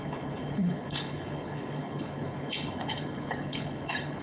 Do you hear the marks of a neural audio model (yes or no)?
yes